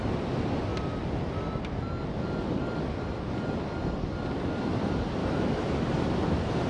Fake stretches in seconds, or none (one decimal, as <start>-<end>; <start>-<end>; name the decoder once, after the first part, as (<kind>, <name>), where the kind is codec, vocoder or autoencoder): 5.2-5.7 (autoencoder, DAC-VAE)